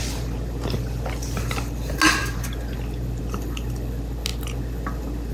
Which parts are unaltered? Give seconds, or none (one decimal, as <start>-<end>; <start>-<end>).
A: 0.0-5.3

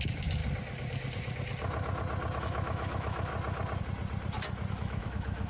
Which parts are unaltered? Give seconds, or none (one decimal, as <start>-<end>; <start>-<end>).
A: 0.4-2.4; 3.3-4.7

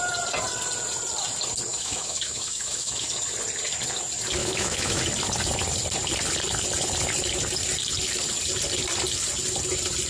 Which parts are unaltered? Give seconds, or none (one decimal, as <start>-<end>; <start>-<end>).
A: 0.0-1.7; 3.1-4.4; 5.0-10.1

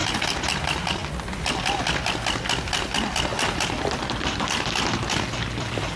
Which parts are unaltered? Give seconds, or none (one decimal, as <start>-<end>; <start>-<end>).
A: 0.0-6.0